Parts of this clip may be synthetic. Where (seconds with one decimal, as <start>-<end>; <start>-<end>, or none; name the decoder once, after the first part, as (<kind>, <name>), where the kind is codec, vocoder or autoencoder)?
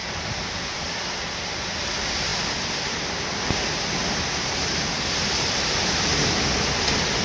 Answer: none